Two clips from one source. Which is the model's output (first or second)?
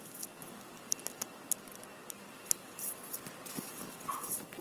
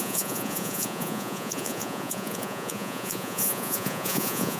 second